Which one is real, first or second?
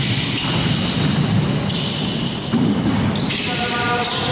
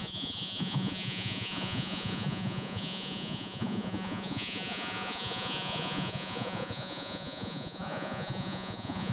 first